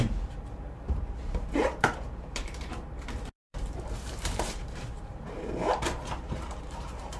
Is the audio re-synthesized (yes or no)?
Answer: yes